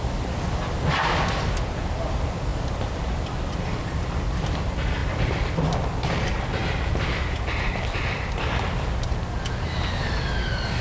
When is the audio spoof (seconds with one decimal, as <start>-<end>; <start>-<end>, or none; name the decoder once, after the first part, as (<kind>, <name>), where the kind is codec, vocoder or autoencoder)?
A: none